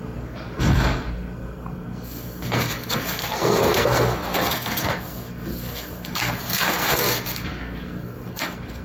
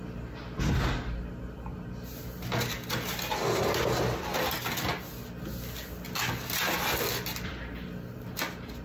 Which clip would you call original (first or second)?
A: second